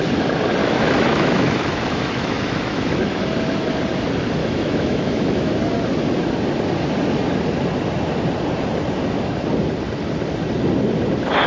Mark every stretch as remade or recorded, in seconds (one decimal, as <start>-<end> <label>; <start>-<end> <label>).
0.0-0.6 recorded; 0.6-3.2 remade; 3.2-4.4 recorded; 4.4-5.5 remade; 5.5-11.5 recorded